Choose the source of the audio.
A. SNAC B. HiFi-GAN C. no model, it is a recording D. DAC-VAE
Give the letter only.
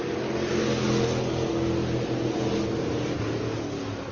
C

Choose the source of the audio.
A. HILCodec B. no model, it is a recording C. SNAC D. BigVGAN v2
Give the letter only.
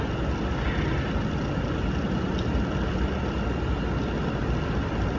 B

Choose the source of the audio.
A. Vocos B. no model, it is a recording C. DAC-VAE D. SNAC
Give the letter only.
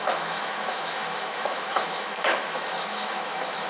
C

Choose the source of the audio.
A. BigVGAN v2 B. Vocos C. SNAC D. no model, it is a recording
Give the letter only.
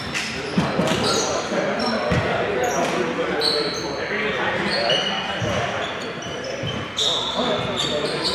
D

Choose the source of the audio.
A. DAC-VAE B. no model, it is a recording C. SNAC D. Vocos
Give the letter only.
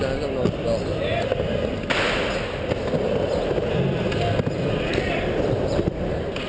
B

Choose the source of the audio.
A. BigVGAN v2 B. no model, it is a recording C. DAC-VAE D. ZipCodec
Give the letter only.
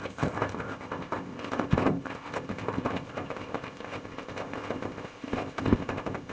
D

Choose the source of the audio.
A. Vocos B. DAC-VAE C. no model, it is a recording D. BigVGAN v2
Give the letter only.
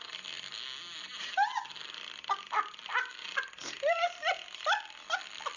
C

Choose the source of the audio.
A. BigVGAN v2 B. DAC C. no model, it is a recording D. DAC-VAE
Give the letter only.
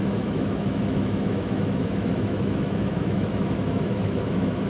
D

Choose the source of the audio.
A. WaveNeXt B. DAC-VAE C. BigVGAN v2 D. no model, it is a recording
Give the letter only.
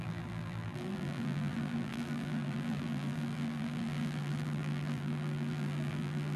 C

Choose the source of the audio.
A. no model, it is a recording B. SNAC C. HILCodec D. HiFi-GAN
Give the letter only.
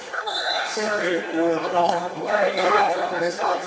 B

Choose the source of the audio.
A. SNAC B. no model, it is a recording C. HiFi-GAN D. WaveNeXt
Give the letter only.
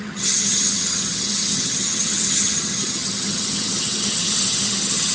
C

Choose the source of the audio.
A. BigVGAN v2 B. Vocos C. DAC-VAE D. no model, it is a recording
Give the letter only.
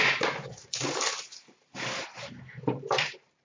A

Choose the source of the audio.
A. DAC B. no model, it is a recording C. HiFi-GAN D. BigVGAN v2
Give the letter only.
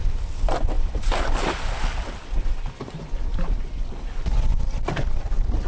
B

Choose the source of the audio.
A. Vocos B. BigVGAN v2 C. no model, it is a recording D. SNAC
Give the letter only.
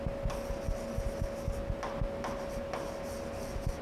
C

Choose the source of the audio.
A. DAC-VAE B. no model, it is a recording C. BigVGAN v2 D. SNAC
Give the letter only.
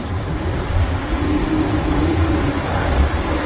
B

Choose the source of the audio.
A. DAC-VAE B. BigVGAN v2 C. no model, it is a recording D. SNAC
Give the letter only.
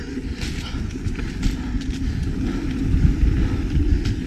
C